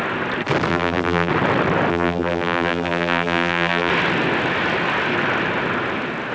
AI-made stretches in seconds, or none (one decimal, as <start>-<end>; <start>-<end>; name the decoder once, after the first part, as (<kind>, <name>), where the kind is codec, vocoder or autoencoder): 0.7-1.3 (vocoder, BigVGAN v2); 1.9-3.9